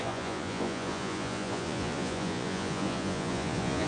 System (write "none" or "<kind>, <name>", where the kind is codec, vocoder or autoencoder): vocoder, Vocos